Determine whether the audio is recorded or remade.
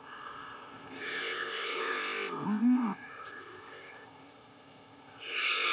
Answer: remade